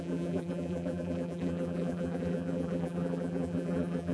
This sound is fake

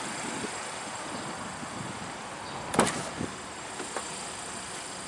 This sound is real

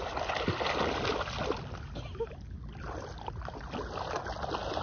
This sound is real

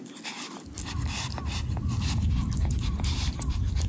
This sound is real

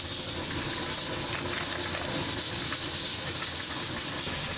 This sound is real